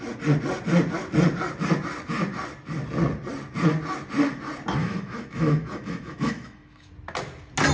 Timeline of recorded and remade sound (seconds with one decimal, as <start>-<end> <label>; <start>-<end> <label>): 0.0-4.8 recorded; 4.8-6.9 remade; 6.9-7.7 recorded